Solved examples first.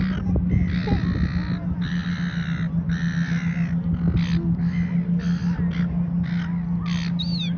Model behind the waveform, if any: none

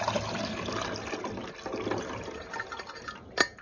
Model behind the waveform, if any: none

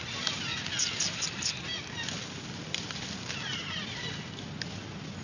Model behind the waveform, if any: none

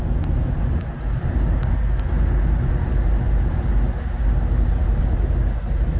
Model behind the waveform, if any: none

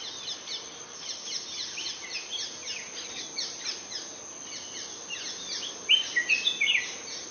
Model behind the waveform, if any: none